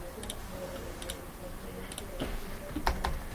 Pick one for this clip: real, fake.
real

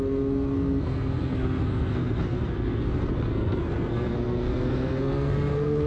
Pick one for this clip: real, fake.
fake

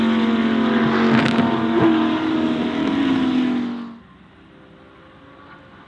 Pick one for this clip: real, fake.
real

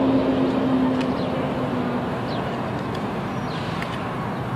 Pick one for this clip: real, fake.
real